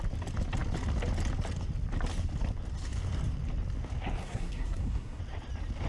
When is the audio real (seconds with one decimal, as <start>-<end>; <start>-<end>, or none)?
0.0-4.2; 5.2-5.9